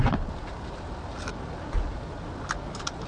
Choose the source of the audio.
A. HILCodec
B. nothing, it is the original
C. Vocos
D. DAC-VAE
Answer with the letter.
B